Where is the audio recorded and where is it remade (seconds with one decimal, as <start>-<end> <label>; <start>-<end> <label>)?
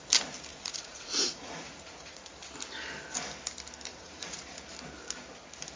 0.0-0.5 recorded; 0.5-2.4 remade; 2.4-3.9 recorded; 3.9-4.7 remade; 4.7-5.8 recorded